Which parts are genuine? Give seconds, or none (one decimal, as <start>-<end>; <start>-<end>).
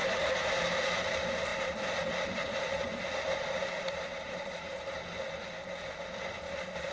0.0-1.5; 4.7-6.9